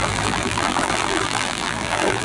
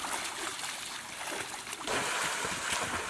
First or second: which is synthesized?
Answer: first